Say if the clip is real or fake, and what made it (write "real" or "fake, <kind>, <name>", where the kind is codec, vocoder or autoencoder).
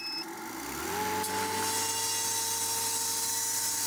real